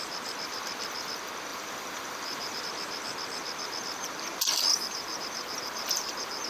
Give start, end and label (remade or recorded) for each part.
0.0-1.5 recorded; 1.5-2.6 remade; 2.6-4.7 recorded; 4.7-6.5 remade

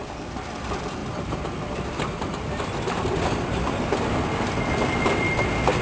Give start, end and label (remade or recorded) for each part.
0.0-1.0 recorded; 1.0-4.1 remade; 4.1-5.8 recorded

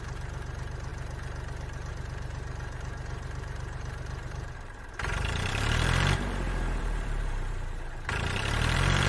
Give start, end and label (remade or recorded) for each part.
0.0-0.9 remade; 0.9-1.9 recorded; 1.9-9.1 remade

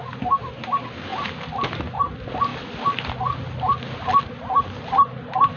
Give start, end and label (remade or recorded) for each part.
0.0-1.1 recorded; 1.1-2.1 remade; 2.1-2.5 recorded; 2.5-3.1 remade; 3.1-5.6 recorded

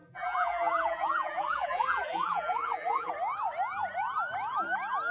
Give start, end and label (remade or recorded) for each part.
0.0-3.1 remade; 3.1-5.1 recorded

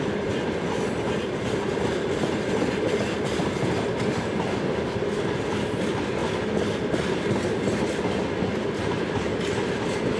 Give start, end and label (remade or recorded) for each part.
0.0-10.2 recorded

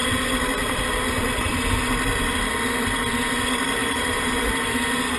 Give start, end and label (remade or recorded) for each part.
0.0-3.8 recorded; 3.8-4.5 remade; 4.5-5.2 recorded

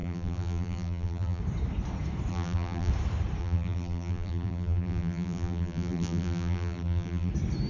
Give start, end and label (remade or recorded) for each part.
0.0-1.4 remade; 1.4-2.3 recorded; 2.3-2.9 remade; 2.9-3.4 recorded; 3.4-7.3 remade; 7.3-7.7 recorded